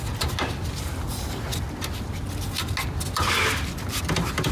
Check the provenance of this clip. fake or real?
real